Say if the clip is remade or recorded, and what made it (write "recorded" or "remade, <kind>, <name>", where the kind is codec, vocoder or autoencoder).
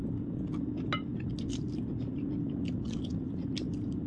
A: recorded